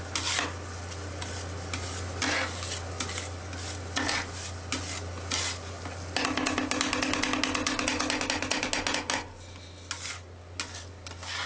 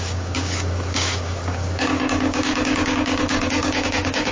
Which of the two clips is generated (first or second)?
second